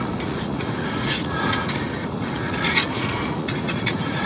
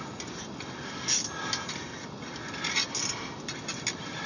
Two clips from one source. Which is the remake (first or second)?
first